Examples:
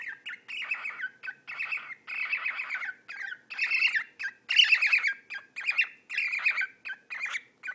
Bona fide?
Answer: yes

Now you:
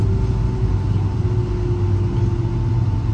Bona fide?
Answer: yes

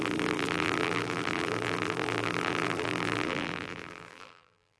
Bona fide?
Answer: no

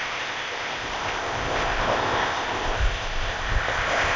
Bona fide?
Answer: no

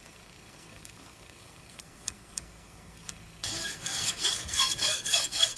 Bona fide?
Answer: no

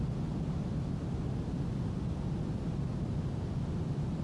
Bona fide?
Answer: yes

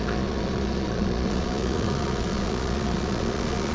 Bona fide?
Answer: no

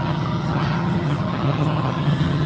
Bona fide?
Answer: no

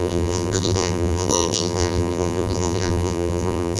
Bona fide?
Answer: no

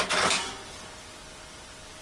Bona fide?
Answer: yes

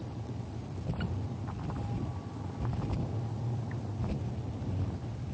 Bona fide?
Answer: yes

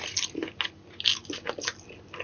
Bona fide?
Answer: yes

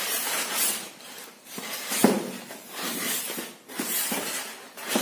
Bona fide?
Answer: no